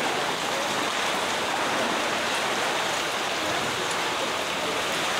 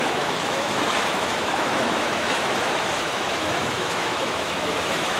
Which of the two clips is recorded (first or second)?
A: first